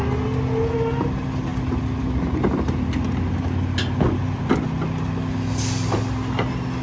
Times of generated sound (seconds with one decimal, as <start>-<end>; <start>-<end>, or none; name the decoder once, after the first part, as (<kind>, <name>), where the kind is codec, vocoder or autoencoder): none